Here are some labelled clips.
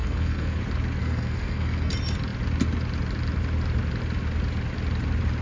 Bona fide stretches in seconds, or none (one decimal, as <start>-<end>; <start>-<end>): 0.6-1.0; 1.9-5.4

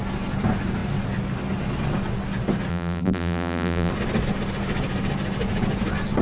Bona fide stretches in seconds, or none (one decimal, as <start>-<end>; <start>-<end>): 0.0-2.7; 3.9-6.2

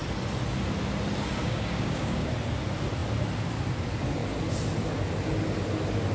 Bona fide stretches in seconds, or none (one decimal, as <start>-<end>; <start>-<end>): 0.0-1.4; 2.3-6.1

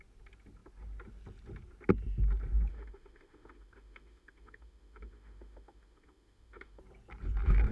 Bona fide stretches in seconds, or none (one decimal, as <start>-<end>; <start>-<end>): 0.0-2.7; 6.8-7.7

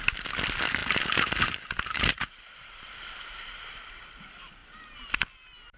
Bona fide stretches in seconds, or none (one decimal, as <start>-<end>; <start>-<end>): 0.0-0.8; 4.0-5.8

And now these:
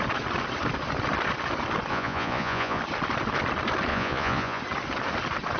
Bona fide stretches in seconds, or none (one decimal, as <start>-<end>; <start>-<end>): 0.0-1.9; 2.8-3.9; 4.6-5.6